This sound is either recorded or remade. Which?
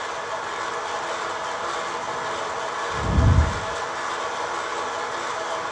recorded